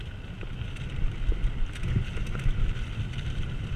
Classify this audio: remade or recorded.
recorded